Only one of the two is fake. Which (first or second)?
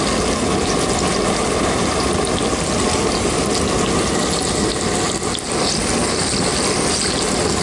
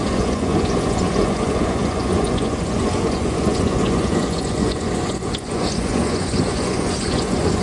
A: second